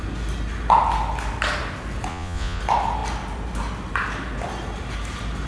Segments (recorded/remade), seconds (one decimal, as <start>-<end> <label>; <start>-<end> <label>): 0.0-2.1 recorded; 2.1-2.6 remade; 2.6-5.5 recorded